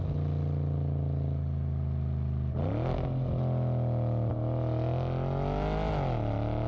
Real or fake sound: real